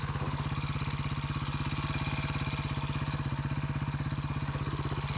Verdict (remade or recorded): recorded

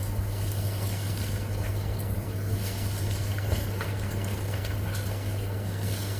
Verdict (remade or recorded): remade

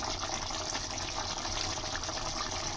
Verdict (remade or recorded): recorded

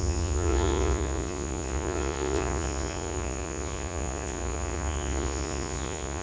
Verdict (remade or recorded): remade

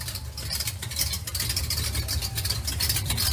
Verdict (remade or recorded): recorded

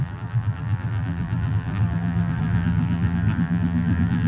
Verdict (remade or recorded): remade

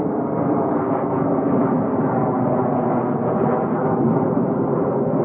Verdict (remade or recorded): recorded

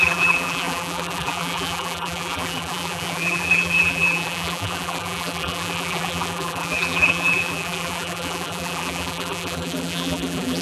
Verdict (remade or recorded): remade